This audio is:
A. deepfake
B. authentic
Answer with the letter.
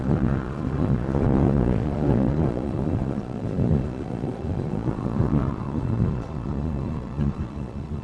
A